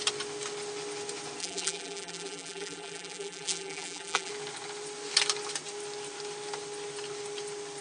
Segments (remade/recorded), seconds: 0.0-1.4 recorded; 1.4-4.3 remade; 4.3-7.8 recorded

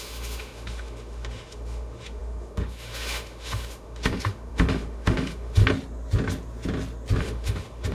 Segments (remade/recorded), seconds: 0.0-5.6 remade; 5.6-7.2 recorded; 7.2-7.9 remade

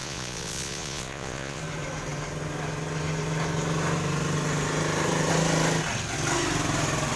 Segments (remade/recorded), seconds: 0.0-1.6 remade; 1.6-7.2 recorded

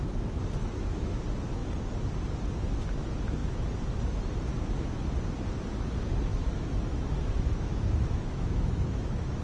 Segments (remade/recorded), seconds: 0.0-0.6 recorded; 0.6-1.2 remade; 1.2-6.3 recorded; 6.3-9.4 remade

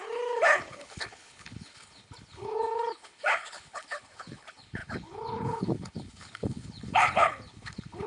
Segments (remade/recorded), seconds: 0.0-8.1 remade

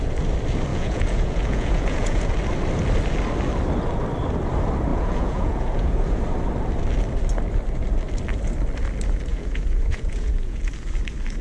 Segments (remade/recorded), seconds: 0.0-0.7 recorded; 0.7-2.3 remade; 2.3-4.9 recorded; 4.9-6.0 remade; 6.0-9.3 recorded; 9.3-10.6 remade; 10.6-11.4 recorded

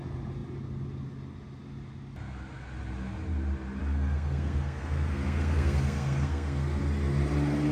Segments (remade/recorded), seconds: 0.0-3.8 recorded; 3.8-6.8 remade; 6.8-7.7 recorded

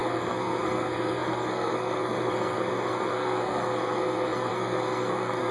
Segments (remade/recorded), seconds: 0.0-5.5 remade